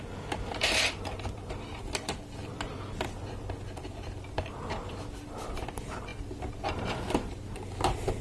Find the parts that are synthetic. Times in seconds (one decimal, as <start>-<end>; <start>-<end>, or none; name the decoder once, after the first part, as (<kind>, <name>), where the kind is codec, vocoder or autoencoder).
0.0-8.2 (vocoder, BigVGAN v2)